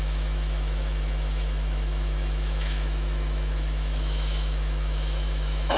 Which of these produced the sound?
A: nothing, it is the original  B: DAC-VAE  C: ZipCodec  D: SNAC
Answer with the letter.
B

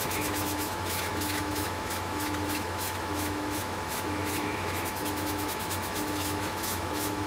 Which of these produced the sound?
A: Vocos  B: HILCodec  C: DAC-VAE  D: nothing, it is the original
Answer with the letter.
C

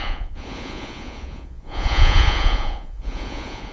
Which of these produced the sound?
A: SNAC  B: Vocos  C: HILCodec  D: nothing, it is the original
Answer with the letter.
B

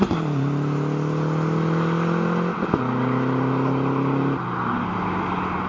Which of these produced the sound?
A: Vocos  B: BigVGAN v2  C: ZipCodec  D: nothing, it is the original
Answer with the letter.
D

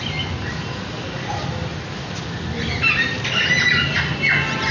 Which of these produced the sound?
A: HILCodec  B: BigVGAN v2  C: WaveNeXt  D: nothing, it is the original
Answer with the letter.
D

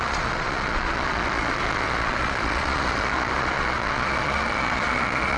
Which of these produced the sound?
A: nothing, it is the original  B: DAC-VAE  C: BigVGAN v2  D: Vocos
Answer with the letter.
D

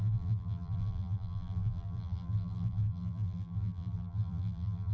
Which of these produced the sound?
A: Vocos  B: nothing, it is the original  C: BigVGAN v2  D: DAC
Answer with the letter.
C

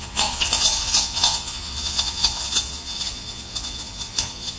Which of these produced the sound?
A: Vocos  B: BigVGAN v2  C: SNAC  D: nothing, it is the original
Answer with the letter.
A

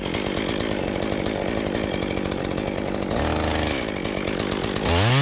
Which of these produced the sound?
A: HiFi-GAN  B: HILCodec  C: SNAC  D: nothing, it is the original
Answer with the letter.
D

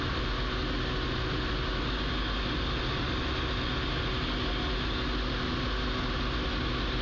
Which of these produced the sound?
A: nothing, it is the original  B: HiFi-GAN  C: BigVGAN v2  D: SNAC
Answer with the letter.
A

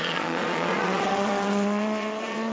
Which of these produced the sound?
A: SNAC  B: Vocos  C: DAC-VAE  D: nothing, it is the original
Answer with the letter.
B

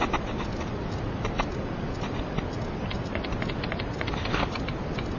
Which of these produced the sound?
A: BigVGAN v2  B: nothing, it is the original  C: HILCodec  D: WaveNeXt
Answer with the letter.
B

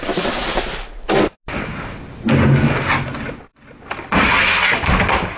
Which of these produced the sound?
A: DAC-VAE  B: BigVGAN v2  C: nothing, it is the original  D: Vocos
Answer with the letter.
C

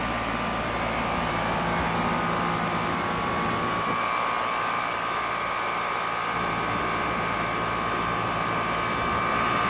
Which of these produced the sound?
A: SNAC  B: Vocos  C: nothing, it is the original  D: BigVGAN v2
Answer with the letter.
D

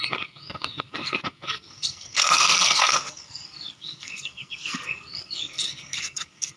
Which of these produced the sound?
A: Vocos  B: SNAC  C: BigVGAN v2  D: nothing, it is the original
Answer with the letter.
B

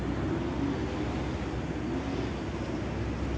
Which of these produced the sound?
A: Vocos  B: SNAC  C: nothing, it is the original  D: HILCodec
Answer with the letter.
C